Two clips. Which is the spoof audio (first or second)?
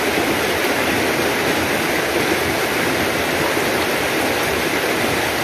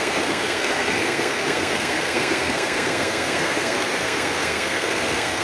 second